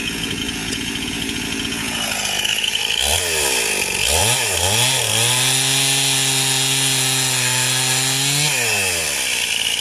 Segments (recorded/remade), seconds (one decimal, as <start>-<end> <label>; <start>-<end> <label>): 0.0-2.8 remade; 2.8-9.8 recorded